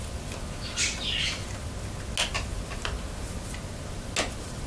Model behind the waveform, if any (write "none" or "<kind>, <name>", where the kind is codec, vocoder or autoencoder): none